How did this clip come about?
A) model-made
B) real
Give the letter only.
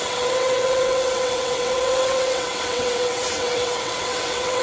A